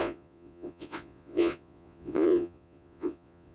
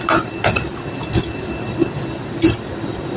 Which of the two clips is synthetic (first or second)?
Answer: first